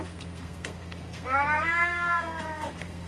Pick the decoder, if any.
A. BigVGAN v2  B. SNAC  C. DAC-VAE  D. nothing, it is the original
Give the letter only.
B